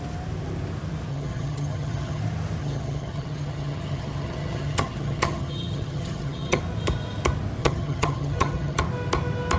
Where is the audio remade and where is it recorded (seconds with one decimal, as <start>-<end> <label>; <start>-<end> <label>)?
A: 0.0-1.1 recorded; 1.1-2.2 remade; 2.2-2.6 recorded; 2.6-6.6 remade; 6.6-7.6 recorded; 7.6-8.8 remade; 8.8-9.6 recorded